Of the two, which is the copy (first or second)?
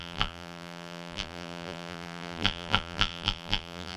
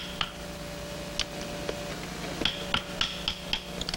first